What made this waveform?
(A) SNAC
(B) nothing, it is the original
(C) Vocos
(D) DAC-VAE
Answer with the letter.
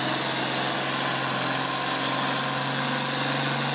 B